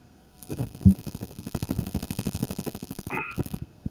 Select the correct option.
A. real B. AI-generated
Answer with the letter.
B